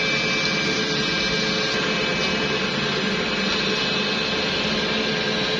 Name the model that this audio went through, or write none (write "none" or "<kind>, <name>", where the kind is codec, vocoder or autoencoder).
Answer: none